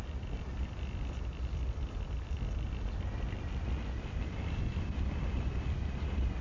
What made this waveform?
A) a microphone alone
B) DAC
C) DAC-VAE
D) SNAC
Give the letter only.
A